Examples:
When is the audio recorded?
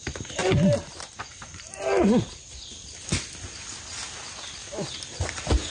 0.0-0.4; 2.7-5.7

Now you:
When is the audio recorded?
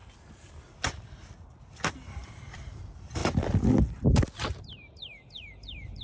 0.0-1.9; 3.2-4.7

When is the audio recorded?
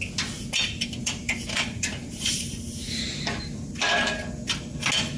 0.0-1.0; 4.1-5.2